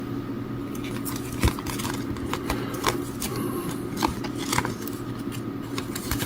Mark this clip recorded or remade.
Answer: recorded